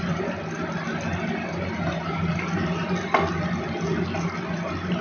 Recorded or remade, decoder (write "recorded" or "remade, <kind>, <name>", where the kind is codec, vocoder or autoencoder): recorded